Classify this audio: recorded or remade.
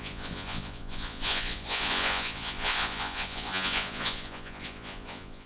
remade